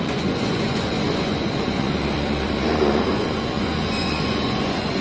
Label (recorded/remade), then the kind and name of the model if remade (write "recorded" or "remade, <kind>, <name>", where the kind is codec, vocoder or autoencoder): remade, vocoder, Vocos